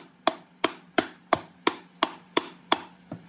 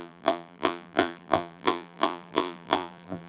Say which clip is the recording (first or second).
first